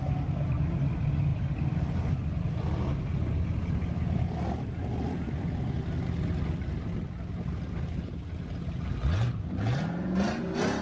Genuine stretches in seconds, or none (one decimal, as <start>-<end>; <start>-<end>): 0.0-10.8

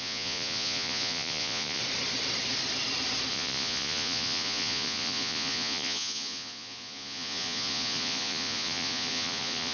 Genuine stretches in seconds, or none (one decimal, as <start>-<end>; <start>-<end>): 1.8-3.3